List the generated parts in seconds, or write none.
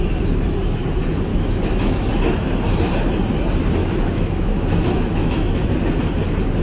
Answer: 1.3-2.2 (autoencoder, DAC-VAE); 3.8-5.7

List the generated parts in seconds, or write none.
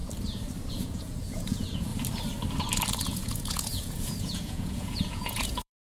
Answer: 0.7-1.9 (vocoder, Vocos); 2.9-5.9